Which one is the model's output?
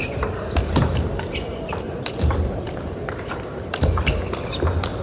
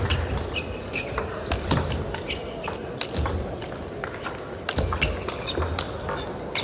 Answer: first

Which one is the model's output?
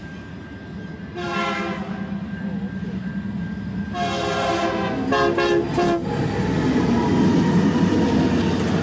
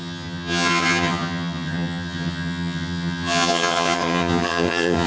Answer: second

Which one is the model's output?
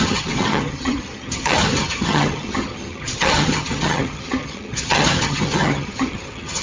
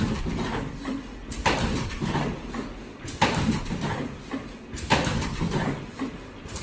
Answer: first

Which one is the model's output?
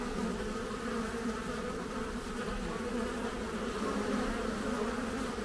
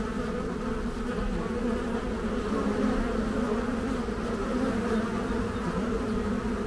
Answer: first